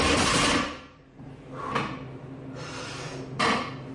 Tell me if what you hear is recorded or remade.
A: recorded